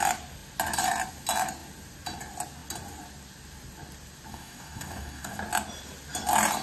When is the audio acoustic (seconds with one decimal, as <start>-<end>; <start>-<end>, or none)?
0.0-4.3; 5.4-6.6